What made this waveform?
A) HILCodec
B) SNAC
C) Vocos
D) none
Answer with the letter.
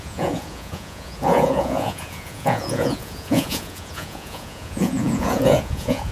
C